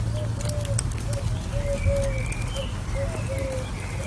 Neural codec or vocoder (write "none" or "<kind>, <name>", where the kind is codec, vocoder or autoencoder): none